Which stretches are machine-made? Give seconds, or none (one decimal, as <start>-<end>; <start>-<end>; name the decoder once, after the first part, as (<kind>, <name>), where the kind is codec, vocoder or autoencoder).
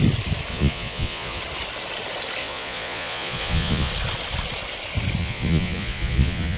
0.5-1.4 (vocoder, Vocos); 2.4-3.9; 5.2-6.6